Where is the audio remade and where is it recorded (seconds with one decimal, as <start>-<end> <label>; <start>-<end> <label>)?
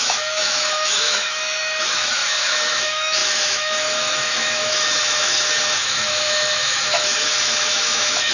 0.0-8.3 remade